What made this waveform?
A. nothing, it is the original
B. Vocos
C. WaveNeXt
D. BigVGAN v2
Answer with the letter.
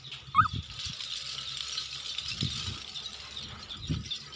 A